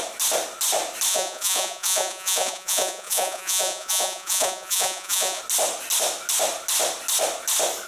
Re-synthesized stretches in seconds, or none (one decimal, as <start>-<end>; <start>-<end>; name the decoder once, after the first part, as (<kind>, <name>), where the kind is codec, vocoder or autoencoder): 1.1-5.4 (vocoder, Vocos)